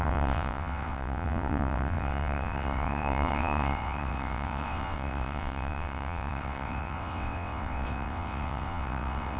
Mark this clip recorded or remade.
remade